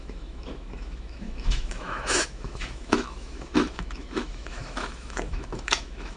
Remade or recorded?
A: remade